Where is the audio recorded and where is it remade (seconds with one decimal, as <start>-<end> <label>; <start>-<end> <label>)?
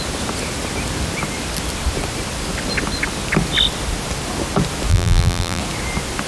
0.0-4.9 recorded; 4.9-5.6 remade; 5.6-6.3 recorded